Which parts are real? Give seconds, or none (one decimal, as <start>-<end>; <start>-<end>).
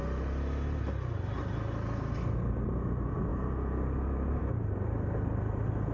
0.0-5.9